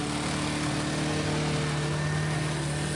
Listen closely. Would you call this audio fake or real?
real